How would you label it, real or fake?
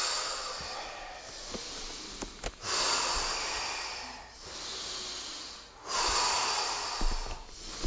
real